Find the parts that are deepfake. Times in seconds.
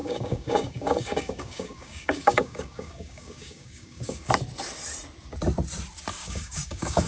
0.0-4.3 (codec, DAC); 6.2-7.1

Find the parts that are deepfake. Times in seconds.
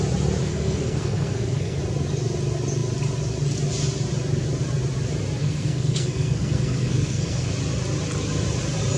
0.4-1.8 (codec, SNAC); 5.4-7.5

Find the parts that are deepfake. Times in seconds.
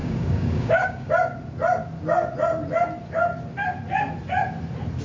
0.0-1.1 (codec, DAC)